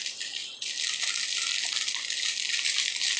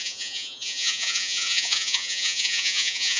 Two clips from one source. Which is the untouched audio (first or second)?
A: first